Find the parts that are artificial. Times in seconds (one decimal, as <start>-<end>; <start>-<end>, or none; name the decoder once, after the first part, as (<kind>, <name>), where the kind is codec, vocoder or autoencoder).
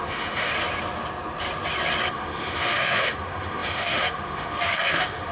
0.0-0.5 (autoencoder, DAC-VAE); 2.1-5.3